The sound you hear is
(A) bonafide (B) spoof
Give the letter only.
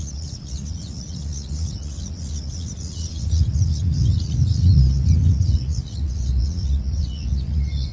B